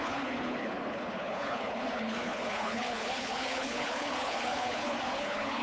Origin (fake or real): fake